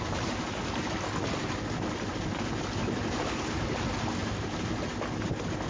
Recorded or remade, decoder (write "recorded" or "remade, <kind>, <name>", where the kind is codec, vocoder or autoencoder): recorded